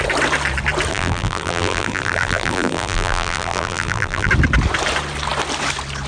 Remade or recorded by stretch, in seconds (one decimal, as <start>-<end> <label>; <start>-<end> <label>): 0.0-0.9 recorded; 0.9-4.3 remade; 4.3-6.1 recorded